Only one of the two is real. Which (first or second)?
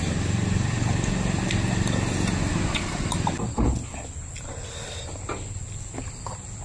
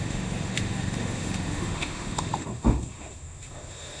first